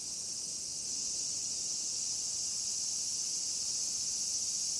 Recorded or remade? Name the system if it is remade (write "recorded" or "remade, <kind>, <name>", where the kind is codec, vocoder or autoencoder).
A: recorded